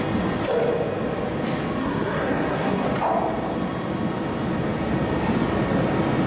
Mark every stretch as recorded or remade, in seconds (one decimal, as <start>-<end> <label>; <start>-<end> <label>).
0.0-1.8 recorded; 1.8-2.9 remade; 2.9-6.3 recorded

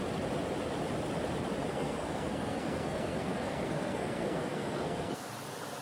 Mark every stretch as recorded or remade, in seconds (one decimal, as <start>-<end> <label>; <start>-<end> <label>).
0.0-1.7 recorded; 1.7-5.2 remade; 5.2-5.8 recorded

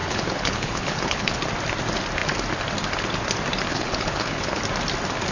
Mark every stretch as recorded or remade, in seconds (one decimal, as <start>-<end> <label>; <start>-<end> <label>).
0.0-1.3 remade; 1.3-3.7 recorded; 3.7-4.6 remade; 4.6-5.3 recorded

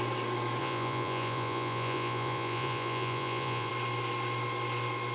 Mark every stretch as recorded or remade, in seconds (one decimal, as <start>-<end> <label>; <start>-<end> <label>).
0.0-0.6 recorded; 0.6-3.7 remade; 3.7-5.1 recorded

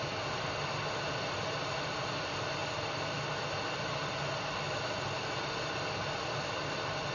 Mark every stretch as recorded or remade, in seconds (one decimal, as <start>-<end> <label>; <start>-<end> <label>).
0.0-7.1 recorded

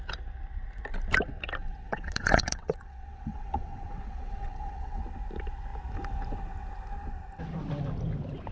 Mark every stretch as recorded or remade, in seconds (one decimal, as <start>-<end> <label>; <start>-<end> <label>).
0.0-1.6 recorded; 1.6-5.0 remade; 5.0-8.5 recorded

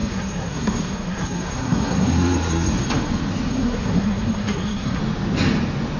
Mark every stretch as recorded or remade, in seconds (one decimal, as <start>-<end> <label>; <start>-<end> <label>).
0.0-2.8 remade; 2.8-3.5 recorded; 3.5-5.0 remade; 5.0-6.0 recorded

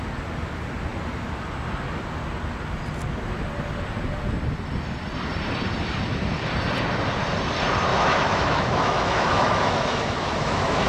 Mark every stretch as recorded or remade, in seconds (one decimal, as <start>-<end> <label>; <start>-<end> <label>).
0.0-7.9 recorded; 7.9-10.9 remade